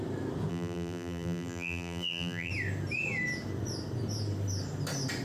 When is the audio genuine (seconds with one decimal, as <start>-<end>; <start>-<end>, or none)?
0.0-0.5; 2.5-5.2